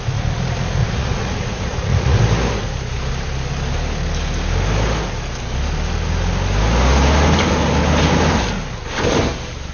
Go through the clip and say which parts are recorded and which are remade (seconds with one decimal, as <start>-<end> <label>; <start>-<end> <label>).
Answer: 0.0-0.8 recorded; 0.8-2.2 remade; 2.2-9.7 recorded